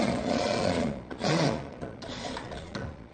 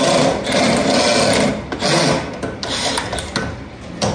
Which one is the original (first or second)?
second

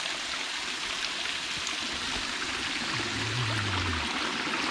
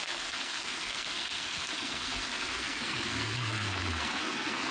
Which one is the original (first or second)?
first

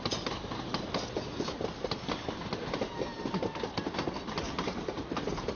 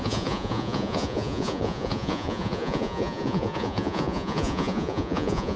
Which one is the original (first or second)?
first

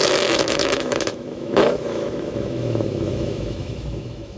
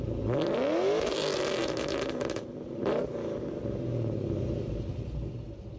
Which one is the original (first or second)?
second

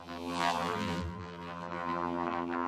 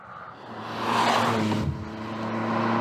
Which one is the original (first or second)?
second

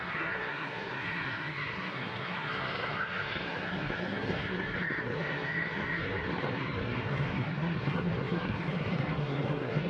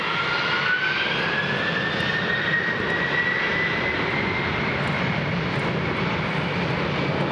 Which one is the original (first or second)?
second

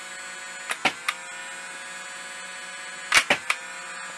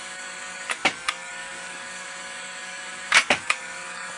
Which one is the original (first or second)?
first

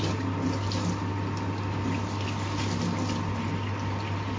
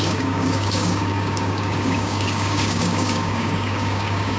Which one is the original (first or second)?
first